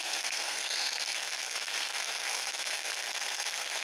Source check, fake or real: fake